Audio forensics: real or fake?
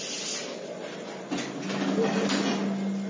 real